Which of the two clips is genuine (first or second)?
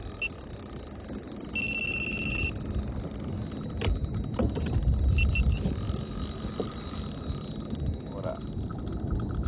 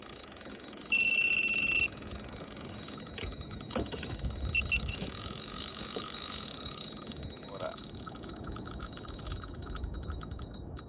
first